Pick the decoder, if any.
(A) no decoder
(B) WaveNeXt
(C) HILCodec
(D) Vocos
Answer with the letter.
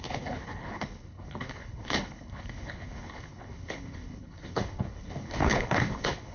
C